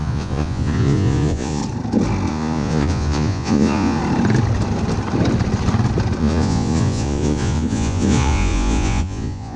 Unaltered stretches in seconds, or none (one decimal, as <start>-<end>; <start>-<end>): 1.6-2.3; 4.0-6.2